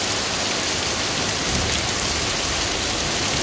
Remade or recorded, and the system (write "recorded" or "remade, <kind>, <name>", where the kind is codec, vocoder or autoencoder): recorded